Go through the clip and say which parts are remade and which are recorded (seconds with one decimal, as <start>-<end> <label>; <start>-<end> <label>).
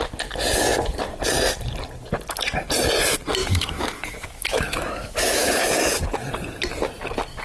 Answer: 0.0-3.4 recorded; 3.4-6.0 remade; 6.0-7.4 recorded